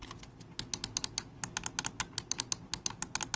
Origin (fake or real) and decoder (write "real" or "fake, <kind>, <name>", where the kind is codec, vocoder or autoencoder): real